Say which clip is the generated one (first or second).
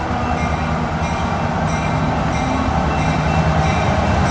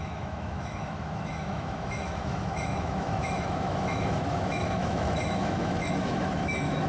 second